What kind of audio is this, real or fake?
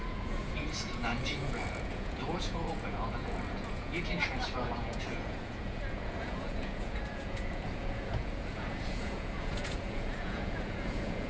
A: fake